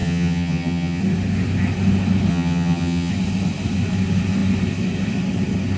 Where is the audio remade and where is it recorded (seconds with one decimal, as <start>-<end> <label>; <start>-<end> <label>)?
0.0-1.0 remade; 1.0-2.3 recorded; 2.3-3.1 remade; 3.1-5.8 recorded